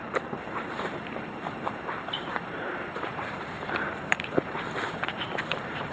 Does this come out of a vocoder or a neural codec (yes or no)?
yes